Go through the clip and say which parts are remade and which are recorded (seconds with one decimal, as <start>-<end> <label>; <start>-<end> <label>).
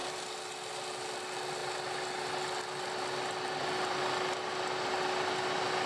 0.0-5.9 recorded